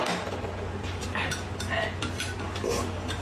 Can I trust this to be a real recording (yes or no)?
yes